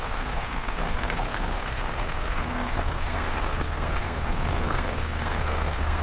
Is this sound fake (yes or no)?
yes